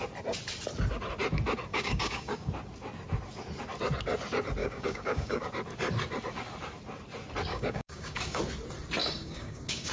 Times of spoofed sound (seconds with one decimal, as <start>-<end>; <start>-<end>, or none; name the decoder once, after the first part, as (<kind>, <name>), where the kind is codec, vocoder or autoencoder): 1.7-2.5 (codec, DAC); 4.6-5.4; 7.5-8.4; 9.0-9.9